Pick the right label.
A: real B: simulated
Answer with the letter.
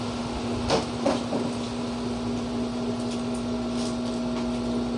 A